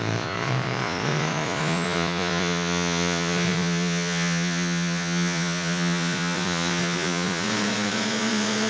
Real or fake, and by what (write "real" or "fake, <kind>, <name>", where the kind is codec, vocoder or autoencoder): fake, vocoder, Vocos